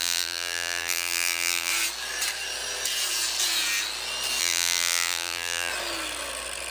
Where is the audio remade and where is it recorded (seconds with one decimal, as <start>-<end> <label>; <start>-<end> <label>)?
0.0-1.7 remade; 1.7-4.4 recorded; 4.4-5.7 remade; 5.7-6.7 recorded